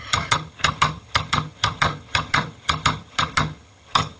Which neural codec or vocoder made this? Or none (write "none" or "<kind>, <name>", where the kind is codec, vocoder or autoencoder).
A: vocoder, HiFi-GAN